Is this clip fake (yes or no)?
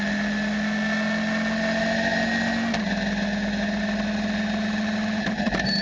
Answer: no